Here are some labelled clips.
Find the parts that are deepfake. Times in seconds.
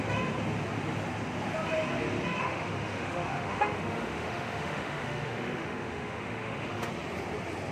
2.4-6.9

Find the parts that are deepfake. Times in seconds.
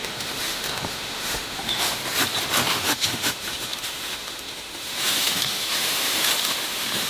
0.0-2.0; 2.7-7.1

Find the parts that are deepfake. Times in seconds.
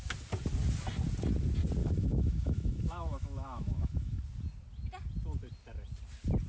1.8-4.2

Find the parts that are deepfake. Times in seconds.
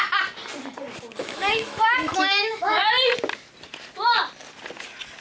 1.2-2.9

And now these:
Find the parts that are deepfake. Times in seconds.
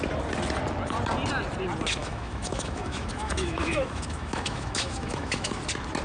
2.0-5.6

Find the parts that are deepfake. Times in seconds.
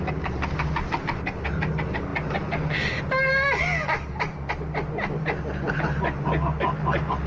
none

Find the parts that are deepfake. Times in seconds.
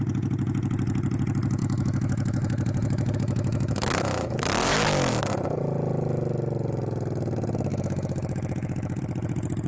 1.6-5.1; 7.7-9.0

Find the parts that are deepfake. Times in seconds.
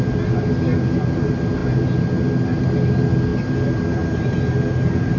none